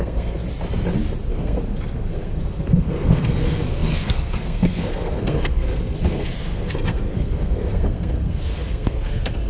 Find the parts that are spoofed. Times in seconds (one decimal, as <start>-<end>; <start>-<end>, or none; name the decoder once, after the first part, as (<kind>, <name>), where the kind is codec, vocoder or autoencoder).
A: 0.0-0.4 (codec, SNAC); 1.3-9.5